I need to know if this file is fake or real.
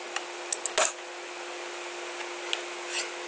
real